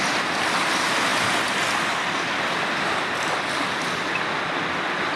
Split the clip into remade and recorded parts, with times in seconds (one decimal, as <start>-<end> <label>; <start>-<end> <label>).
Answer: 0.0-5.2 recorded